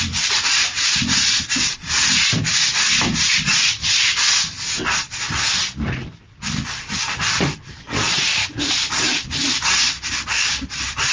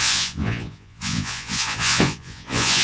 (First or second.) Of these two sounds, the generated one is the second